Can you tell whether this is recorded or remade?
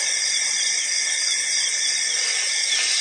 remade